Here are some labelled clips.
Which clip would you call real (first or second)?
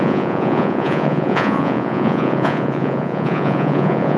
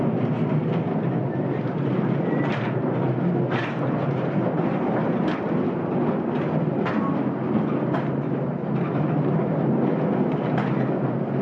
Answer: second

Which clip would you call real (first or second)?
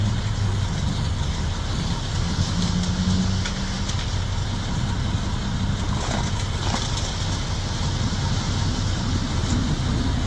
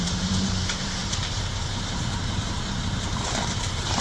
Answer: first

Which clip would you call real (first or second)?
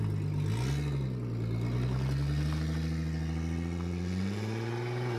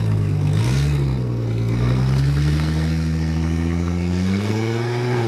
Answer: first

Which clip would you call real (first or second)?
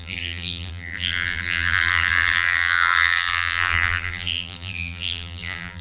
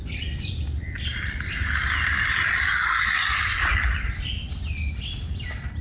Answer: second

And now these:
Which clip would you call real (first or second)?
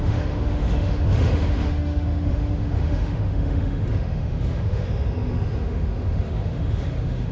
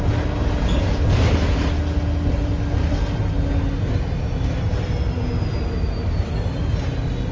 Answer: second